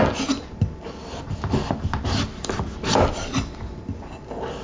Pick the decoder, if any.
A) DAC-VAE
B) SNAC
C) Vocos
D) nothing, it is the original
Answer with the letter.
D